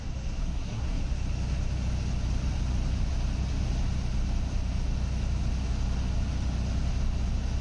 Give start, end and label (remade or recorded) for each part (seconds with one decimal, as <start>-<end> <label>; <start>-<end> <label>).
0.0-0.4 recorded; 0.4-1.0 remade; 1.0-7.6 recorded